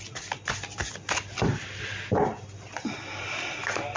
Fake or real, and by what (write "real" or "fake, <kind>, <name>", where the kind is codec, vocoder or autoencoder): real